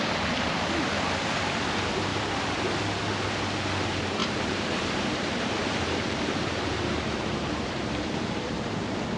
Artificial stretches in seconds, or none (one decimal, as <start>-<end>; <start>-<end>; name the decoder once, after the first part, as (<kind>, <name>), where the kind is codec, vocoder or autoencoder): 2.1-2.7 (vocoder, BigVGAN v2); 4.2-8.5